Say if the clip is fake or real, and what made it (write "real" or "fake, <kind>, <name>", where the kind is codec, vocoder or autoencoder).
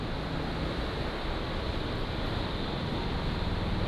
real